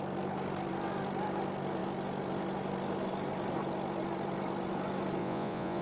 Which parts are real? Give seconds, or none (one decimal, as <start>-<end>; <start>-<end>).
0.0-5.2